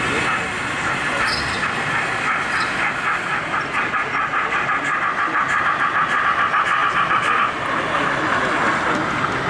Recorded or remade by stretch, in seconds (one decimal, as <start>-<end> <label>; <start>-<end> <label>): 0.0-9.5 recorded